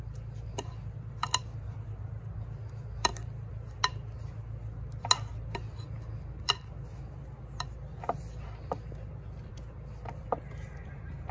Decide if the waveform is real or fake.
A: real